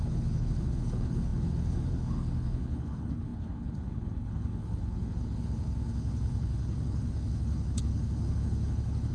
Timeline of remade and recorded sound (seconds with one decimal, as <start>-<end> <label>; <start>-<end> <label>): 0.0-9.1 remade